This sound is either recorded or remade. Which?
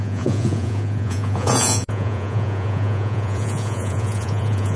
remade